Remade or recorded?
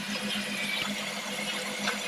recorded